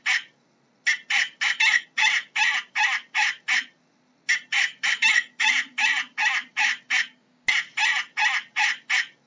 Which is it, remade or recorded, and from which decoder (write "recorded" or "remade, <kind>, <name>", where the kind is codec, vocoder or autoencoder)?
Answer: recorded